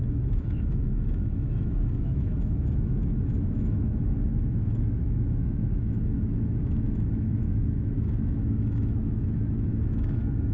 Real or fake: fake